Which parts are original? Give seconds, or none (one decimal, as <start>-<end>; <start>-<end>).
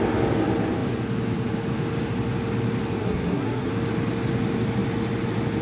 0.0-3.0; 3.7-5.6